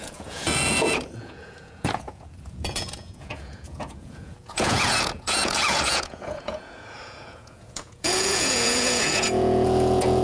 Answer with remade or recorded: remade